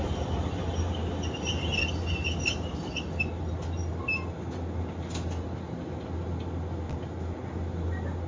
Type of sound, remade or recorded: recorded